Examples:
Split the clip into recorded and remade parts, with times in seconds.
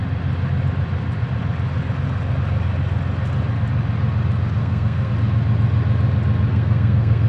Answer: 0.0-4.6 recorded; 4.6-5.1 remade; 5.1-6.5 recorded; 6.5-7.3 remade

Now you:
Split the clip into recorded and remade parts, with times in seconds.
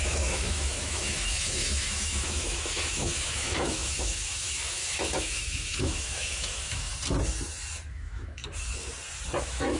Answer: 0.0-6.9 remade; 6.9-7.9 recorded; 7.9-8.4 remade; 8.4-9.4 recorded; 9.4-9.8 remade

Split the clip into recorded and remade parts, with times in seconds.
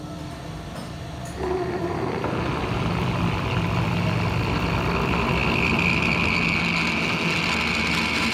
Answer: 0.0-8.3 recorded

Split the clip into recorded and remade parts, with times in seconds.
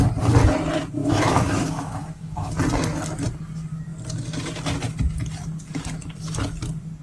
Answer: 0.0-1.0 recorded; 1.0-2.5 remade; 2.5-7.0 recorded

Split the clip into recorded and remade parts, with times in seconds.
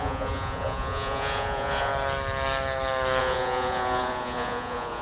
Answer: 0.0-1.9 remade; 1.9-3.2 recorded; 3.2-5.0 remade